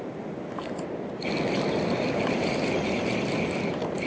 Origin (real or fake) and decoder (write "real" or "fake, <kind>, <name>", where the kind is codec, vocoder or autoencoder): real